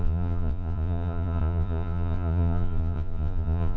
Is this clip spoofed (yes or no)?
yes